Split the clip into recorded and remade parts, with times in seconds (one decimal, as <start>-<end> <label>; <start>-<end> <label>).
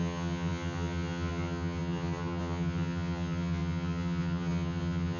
0.0-5.2 remade